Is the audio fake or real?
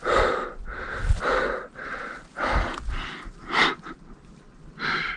real